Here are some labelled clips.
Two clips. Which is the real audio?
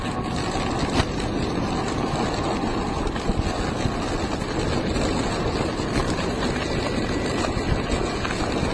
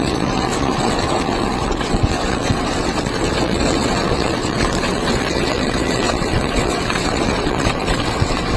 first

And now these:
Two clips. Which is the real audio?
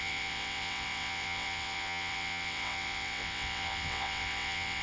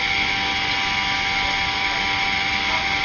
second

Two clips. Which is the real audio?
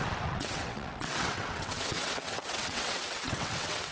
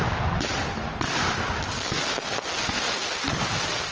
second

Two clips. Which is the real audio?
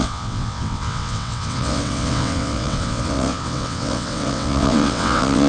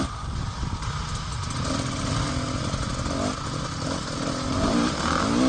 second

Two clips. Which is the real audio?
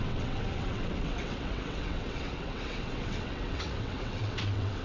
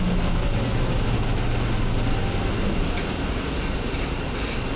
second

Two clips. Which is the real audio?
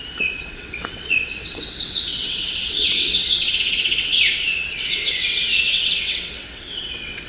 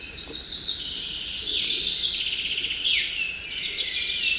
second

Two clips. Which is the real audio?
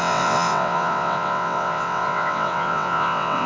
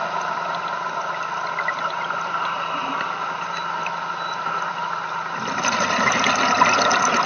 second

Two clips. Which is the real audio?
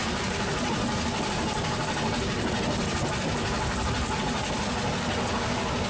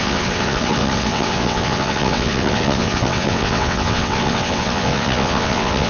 first